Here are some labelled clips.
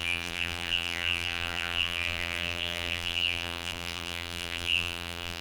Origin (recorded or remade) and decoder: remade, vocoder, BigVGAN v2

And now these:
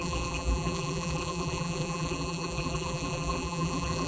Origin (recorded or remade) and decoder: remade, vocoder, BigVGAN v2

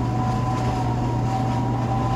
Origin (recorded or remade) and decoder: recorded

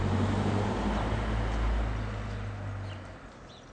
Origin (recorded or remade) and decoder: recorded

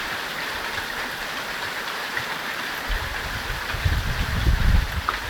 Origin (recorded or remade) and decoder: remade, vocoder, BigVGAN v2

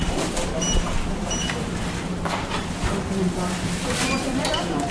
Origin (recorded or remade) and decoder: remade, vocoder, BigVGAN v2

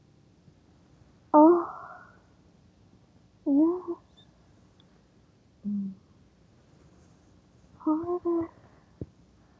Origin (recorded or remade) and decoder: recorded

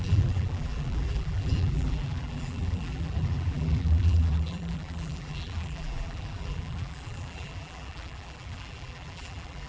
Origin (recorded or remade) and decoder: remade, vocoder, BigVGAN v2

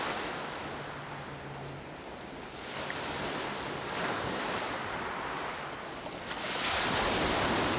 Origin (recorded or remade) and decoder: recorded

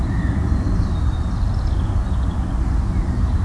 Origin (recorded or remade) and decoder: recorded